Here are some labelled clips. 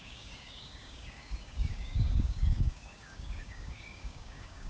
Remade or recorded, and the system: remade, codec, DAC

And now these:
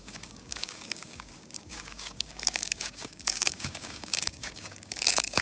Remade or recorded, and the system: remade, codec, DAC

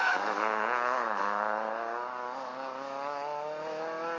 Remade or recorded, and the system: remade, codec, DAC